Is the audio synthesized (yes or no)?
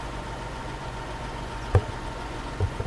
yes